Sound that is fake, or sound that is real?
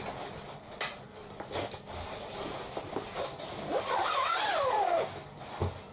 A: real